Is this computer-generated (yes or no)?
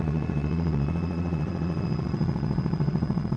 yes